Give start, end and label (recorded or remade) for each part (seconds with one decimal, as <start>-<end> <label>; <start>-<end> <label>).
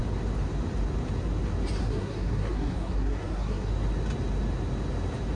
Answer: 0.0-1.8 recorded; 1.8-3.7 remade; 3.7-5.4 recorded